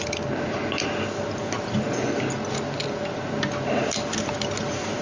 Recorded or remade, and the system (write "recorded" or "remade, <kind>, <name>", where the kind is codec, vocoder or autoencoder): recorded